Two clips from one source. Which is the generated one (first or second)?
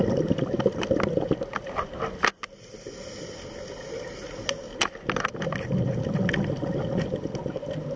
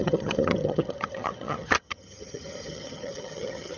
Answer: second